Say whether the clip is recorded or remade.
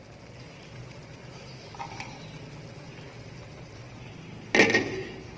recorded